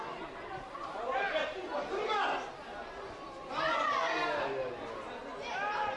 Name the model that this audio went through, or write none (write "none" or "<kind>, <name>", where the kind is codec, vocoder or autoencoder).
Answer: none